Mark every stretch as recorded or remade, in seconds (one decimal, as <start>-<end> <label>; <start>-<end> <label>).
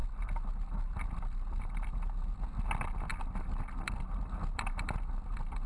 0.0-2.4 remade; 2.4-3.1 recorded; 3.1-5.7 remade